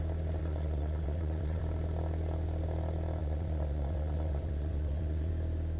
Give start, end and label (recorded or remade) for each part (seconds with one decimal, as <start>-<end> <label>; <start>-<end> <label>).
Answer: 0.0-0.4 recorded; 0.4-1.6 remade; 1.6-3.2 recorded; 3.2-5.3 remade; 5.3-5.8 recorded